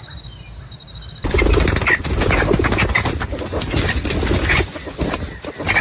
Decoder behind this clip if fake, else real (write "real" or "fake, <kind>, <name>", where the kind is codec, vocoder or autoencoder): real